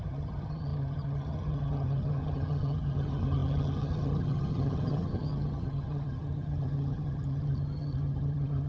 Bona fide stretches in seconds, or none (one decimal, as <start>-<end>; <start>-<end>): none